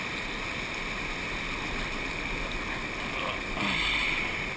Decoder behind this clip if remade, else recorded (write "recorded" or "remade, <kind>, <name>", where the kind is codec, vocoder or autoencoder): recorded